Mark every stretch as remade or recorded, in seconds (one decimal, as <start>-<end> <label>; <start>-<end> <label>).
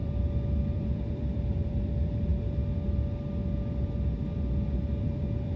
0.0-2.3 remade; 2.3-5.0 recorded; 5.0-5.6 remade